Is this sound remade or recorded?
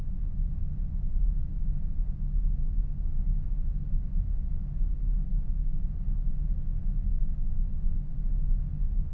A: recorded